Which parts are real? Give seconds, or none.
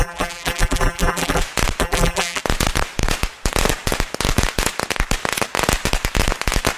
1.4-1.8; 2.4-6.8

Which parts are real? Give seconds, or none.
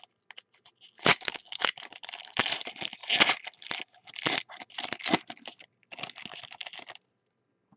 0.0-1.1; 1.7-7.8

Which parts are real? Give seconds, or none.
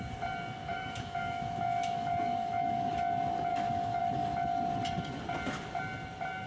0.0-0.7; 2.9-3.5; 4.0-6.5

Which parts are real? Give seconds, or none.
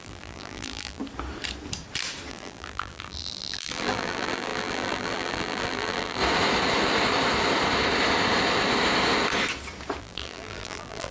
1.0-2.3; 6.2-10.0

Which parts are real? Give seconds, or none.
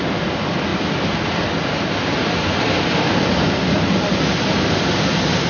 0.0-5.5